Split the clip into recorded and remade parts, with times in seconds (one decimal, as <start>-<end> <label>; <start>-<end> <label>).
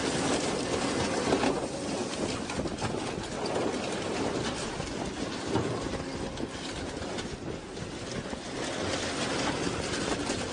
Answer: 0.0-10.5 recorded